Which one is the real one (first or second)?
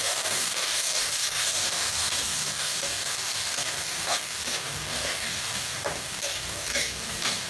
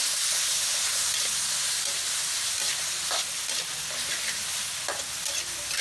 second